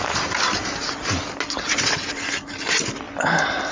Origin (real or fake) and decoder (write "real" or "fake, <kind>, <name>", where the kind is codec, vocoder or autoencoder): real